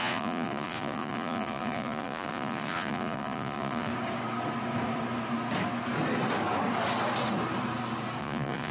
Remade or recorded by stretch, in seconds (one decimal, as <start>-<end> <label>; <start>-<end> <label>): 0.0-3.9 remade; 3.9-8.2 recorded; 8.2-8.7 remade